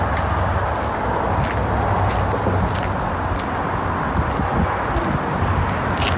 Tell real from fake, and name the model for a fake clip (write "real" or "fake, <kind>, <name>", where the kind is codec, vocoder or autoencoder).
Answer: real